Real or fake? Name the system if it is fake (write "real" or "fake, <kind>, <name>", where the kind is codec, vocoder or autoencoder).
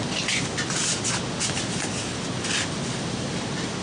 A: real